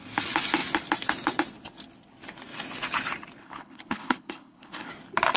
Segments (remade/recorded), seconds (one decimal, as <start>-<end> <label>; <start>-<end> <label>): 0.0-3.4 recorded; 3.4-4.9 remade; 4.9-5.4 recorded